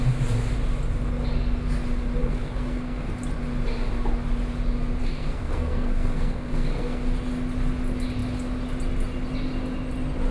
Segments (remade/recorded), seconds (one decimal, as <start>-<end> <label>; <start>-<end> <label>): 0.0-2.2 recorded; 2.2-3.1 remade; 3.1-5.0 recorded; 5.0-7.0 remade; 7.0-10.3 recorded